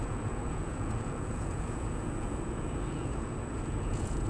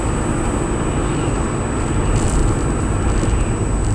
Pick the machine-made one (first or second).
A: first